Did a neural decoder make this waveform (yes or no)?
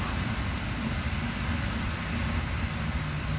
no